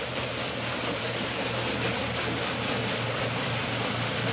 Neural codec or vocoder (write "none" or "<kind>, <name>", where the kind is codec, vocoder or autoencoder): none